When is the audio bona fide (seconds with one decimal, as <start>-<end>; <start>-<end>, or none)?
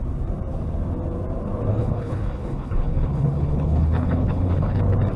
0.0-1.7; 4.8-5.2